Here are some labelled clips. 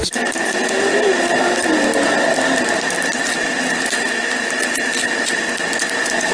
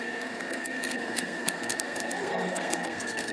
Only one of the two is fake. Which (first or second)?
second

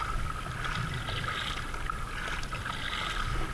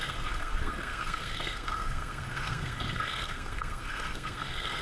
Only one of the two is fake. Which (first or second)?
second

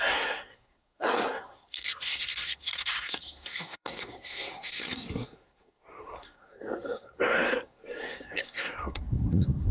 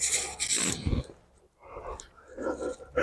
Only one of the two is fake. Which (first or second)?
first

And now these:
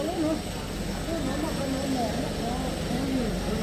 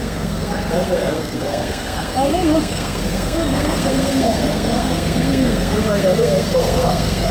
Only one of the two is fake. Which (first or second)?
second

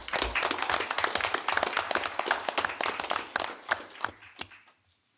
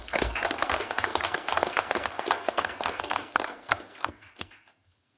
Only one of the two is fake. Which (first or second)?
second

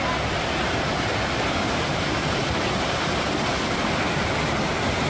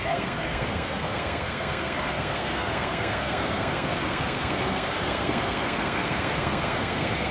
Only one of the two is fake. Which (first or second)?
second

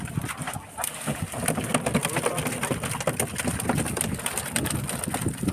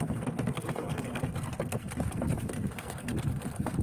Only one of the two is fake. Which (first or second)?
second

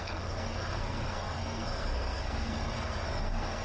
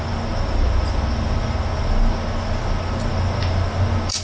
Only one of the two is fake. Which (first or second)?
first